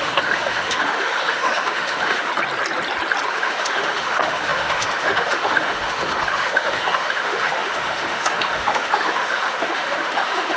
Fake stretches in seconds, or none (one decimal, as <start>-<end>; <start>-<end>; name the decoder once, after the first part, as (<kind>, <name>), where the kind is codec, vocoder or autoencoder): 0.0-2.3 (autoencoder, DAC-VAE); 3.3-10.6